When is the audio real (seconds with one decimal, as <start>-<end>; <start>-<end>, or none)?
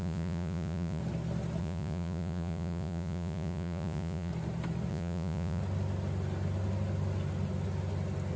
1.0-1.6; 4.3-4.9; 5.6-8.4